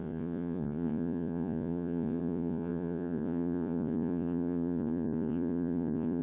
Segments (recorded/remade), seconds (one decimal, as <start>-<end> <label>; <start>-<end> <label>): 0.0-6.2 remade